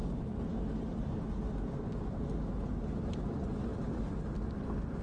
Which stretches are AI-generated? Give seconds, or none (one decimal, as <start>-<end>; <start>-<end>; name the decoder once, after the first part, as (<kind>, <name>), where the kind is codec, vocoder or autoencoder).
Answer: none